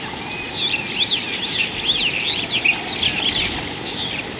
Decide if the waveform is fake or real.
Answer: real